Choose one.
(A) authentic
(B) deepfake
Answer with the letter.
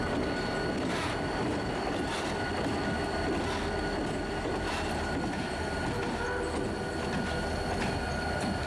A